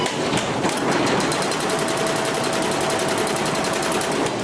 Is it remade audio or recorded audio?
recorded